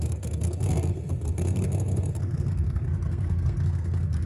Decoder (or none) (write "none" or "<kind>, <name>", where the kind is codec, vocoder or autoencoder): codec, SNAC